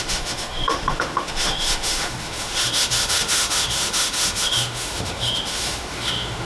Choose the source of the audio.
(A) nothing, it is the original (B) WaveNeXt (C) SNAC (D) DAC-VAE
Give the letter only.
D